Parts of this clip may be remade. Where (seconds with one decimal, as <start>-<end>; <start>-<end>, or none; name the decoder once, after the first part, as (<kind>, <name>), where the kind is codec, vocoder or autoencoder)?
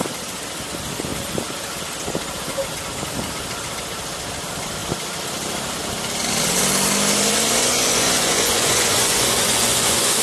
7.6-10.2 (vocoder, Vocos)